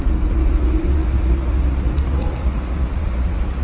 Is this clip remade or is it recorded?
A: remade